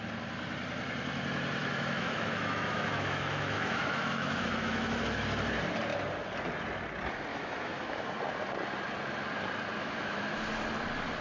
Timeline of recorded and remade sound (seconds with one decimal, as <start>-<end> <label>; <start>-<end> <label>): 0.0-1.6 recorded; 1.6-5.0 remade; 5.0-7.3 recorded; 7.3-8.1 remade; 8.1-9.8 recorded; 9.8-10.4 remade; 10.4-11.2 recorded

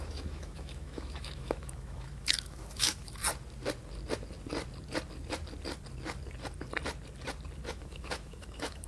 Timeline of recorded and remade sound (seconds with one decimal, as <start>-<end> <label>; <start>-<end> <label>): 0.0-3.2 remade; 3.2-7.7 recorded; 7.7-8.9 remade

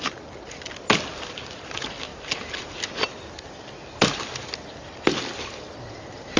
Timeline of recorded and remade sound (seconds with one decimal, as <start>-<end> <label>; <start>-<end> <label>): 0.0-6.4 recorded